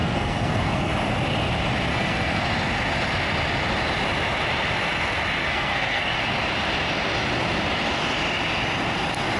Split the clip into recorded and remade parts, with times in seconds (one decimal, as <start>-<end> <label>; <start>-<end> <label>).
0.0-0.9 remade; 0.9-1.9 recorded; 1.9-2.4 remade; 2.4-5.4 recorded; 5.4-6.2 remade; 6.2-9.4 recorded